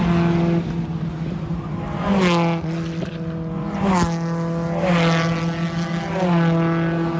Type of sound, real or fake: real